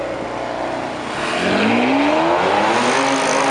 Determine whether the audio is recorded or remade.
recorded